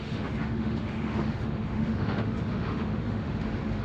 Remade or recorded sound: remade